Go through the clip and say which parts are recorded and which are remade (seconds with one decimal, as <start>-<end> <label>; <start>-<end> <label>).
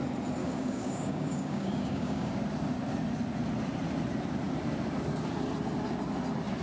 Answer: 0.0-0.4 recorded; 0.4-2.3 remade; 2.3-6.6 recorded